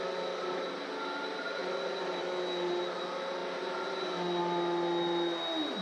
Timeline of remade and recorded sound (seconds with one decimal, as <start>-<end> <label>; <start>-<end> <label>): 0.0-5.8 recorded